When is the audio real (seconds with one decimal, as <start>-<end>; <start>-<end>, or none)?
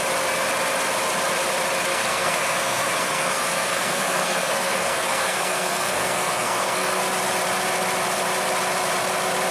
0.0-1.9; 7.0-9.5